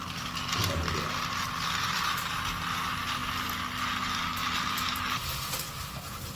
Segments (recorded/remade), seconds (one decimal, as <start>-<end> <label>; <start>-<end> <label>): 0.0-6.4 recorded